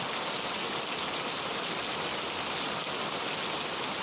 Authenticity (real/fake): real